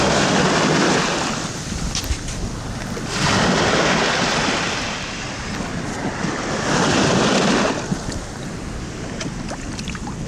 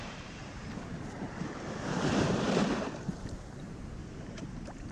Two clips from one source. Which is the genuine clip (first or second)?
first